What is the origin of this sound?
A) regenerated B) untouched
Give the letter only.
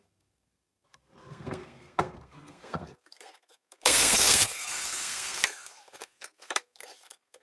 A